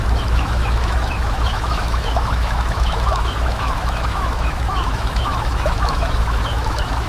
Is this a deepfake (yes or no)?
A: yes